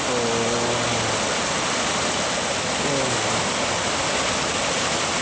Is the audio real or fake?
real